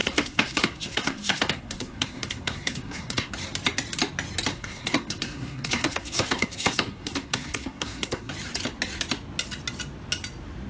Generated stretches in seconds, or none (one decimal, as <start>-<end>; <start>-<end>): 0.0-3.3; 4.5-8.3